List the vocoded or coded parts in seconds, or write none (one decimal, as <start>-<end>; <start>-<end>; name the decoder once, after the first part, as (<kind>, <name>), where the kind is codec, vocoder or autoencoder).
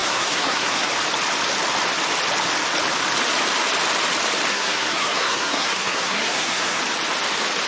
0.0-0.9 (codec, SNAC); 4.5-6.8